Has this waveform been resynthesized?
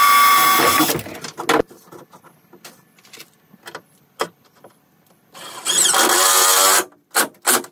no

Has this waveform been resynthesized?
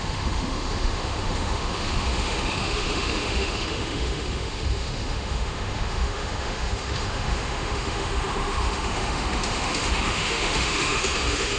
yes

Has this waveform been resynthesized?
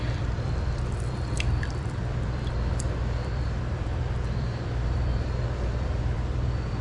yes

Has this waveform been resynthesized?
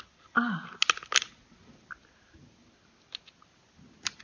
no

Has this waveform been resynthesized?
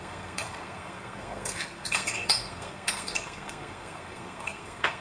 yes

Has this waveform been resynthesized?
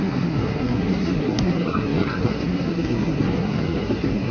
yes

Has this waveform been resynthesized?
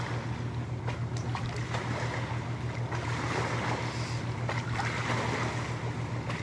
no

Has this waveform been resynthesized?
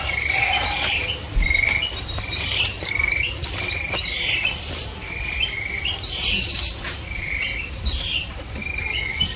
yes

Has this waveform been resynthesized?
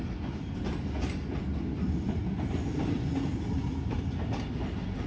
no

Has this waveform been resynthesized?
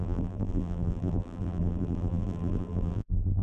yes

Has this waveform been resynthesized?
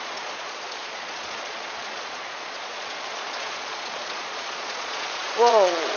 yes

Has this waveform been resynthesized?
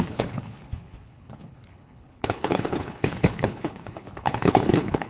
yes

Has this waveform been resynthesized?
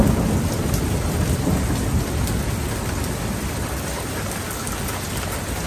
no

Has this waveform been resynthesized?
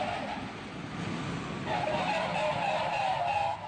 no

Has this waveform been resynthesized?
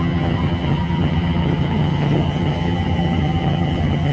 yes